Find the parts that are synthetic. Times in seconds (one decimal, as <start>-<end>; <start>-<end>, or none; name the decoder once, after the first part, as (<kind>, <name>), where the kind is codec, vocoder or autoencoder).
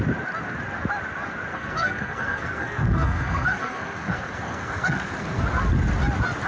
1.5-5.4 (codec, SNAC)